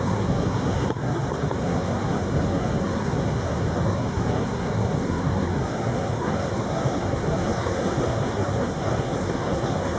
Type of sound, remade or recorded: remade